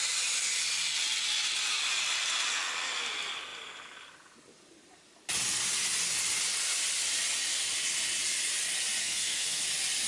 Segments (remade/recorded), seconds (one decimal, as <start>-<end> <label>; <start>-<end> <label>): 0.0-9.0 recorded; 9.0-9.6 remade; 9.6-10.1 recorded